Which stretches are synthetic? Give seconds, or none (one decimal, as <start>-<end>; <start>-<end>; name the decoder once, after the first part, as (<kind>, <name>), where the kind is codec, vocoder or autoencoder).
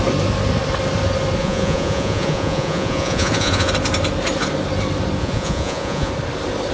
1.4-3.7 (vocoder, Vocos); 5.2-6.1